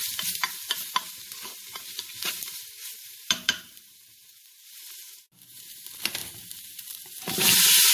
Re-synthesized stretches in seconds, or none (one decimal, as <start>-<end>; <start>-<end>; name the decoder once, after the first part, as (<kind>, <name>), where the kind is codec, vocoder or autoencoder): 0.0-7.9 (vocoder, BigVGAN v2)